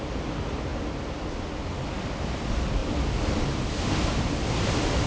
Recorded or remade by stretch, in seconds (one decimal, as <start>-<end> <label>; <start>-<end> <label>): 0.0-5.1 recorded